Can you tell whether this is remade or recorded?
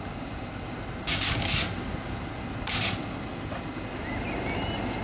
recorded